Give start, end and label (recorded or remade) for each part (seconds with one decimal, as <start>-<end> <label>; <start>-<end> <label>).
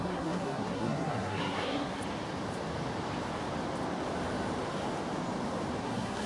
0.0-2.0 remade; 2.0-5.8 recorded; 5.8-6.3 remade